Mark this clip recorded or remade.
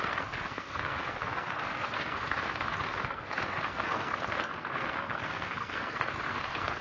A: remade